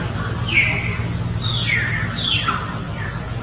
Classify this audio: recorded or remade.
recorded